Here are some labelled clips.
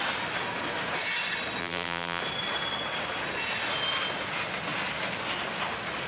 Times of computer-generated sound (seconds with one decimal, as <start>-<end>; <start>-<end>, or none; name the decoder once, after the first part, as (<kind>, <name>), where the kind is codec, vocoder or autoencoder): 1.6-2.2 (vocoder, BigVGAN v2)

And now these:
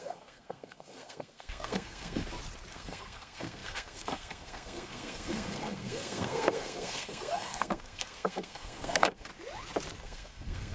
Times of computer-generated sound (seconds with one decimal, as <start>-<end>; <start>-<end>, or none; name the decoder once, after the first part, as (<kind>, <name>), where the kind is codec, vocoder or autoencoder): 0.0-2.2 (codec, SNAC); 2.7-9.3; 10.0-10.7

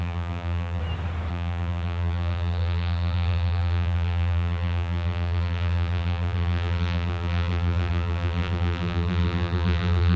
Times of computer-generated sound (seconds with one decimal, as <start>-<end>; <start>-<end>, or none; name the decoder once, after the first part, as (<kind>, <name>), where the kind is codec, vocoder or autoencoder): 0.0-0.8 (vocoder, BigVGAN v2); 1.3-10.2

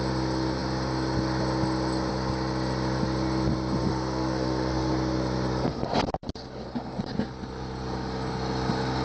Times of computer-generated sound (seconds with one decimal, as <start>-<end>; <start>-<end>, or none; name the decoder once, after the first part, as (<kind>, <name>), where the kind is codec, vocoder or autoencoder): 3.8-4.9 (codec, SNAC)

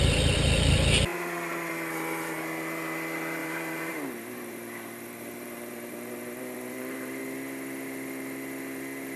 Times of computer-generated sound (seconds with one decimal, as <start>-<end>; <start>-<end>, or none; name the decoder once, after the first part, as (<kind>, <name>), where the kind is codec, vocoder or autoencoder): 3.4-7.2 (vocoder, BigVGAN v2)